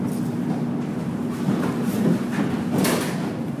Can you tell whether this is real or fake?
real